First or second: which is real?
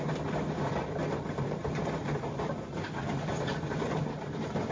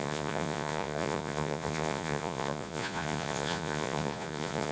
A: first